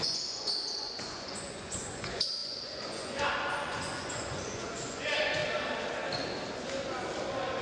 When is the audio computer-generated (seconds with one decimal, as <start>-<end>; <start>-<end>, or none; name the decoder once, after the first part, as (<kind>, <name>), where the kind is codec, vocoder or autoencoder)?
0.0-5.4 (vocoder, Vocos)